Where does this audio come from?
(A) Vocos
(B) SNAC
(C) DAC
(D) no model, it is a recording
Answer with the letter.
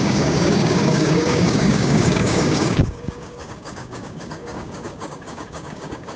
C